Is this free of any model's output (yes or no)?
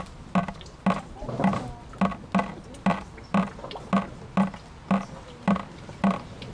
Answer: yes